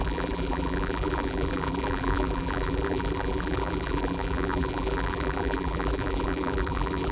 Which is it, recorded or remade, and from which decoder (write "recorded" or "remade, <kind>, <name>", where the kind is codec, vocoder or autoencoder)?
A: remade, vocoder, BigVGAN v2